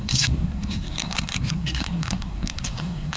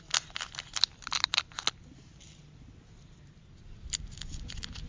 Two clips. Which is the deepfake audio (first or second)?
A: first